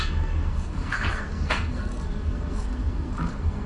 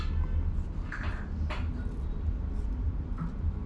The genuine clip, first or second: second